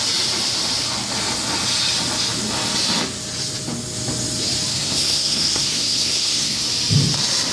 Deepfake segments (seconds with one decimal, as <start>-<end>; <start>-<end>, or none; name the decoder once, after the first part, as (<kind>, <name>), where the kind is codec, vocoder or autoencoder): 4.7-6.6 (codec, SNAC)